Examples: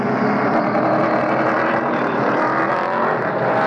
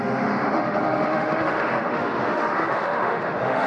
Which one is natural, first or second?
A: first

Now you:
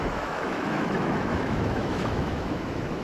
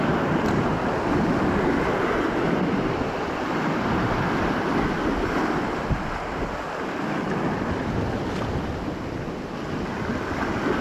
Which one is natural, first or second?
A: second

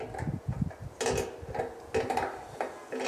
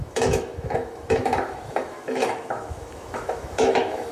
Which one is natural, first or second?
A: first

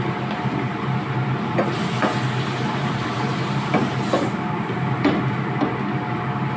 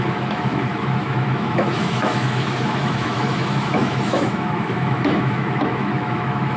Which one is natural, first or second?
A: first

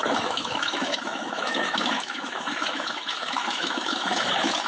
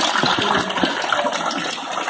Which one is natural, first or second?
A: second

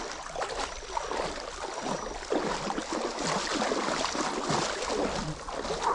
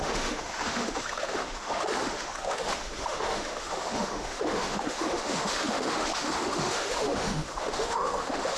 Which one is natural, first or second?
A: first